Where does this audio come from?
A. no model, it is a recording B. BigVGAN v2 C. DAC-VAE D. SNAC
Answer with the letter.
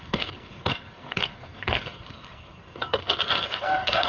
D